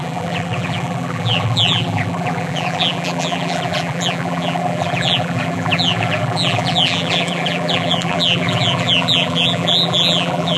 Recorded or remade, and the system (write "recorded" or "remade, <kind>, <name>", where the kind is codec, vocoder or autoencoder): remade, vocoder, BigVGAN v2